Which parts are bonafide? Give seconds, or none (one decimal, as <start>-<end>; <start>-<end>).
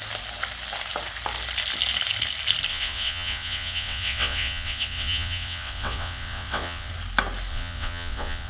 0.0-2.7; 6.9-7.5